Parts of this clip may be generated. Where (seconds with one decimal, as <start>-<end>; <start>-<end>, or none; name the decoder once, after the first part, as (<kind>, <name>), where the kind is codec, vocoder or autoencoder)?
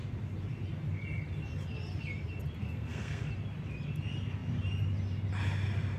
2.6-3.3 (codec, SNAC)